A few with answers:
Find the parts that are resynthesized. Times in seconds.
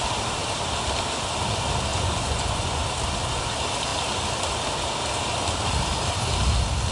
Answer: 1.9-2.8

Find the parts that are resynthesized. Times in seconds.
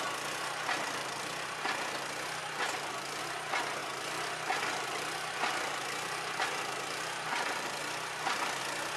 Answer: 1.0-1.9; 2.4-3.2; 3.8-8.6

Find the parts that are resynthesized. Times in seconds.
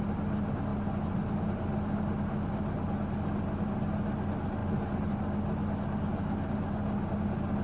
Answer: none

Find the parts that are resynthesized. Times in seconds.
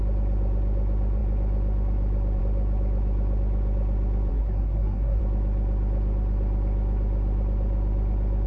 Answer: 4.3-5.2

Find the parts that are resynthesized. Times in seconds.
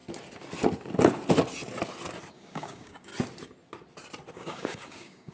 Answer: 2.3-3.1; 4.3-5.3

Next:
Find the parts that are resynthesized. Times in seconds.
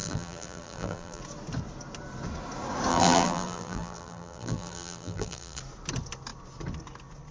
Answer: 0.0-1.2; 2.9-5.6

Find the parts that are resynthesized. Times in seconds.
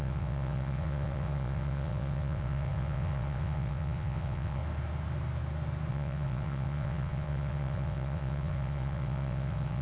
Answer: 0.0-4.6; 5.9-9.8